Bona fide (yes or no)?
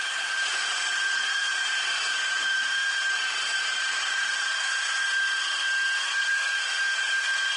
no